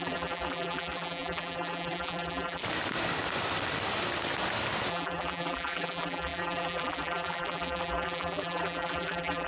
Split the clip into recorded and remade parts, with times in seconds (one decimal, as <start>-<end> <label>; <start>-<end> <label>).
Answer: 0.0-2.6 remade; 2.6-4.9 recorded; 4.9-9.5 remade